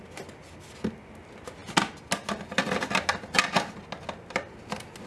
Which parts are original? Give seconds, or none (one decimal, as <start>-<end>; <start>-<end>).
0.0-5.1